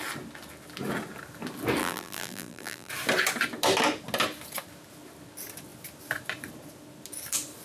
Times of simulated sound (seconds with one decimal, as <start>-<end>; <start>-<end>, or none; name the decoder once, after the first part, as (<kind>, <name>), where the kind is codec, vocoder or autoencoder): 1.8-2.9 (vocoder, BigVGAN v2)